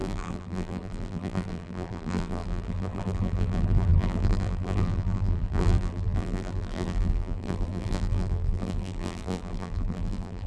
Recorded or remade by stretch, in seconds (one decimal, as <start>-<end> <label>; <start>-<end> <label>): 0.0-10.5 remade